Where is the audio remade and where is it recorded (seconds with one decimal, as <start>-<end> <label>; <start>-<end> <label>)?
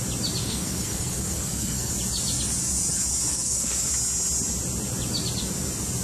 0.0-0.4 recorded; 0.4-1.9 remade; 1.9-3.3 recorded; 3.3-3.9 remade; 3.9-6.0 recorded